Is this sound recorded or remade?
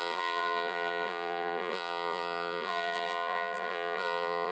remade